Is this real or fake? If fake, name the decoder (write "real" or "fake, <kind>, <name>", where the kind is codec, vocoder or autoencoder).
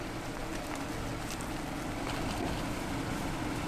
real